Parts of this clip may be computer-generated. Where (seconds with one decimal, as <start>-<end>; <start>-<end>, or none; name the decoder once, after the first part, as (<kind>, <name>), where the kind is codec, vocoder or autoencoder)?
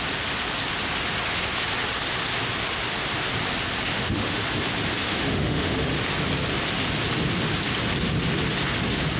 3.9-4.4 (autoencoder, DAC-VAE); 5.0-5.9